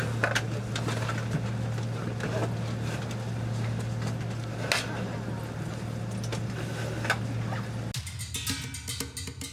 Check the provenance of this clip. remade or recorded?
recorded